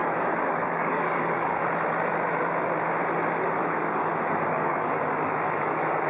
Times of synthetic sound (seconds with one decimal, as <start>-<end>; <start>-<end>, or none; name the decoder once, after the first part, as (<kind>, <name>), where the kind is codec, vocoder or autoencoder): 0.0-1.7 (codec, DAC); 3.6-6.1